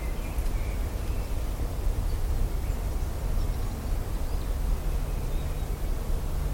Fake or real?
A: real